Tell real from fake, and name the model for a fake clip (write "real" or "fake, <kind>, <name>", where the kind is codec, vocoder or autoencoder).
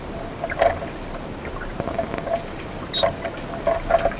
real